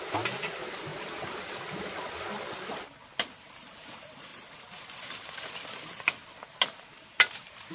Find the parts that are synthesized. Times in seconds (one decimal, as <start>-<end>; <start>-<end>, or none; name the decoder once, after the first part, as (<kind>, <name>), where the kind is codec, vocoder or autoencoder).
none